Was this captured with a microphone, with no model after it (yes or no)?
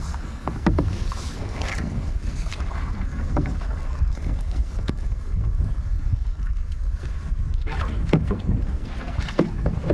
no